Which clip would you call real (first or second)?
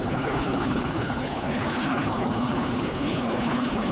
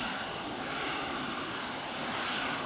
second